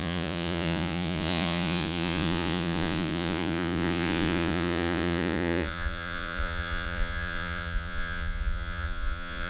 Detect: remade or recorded remade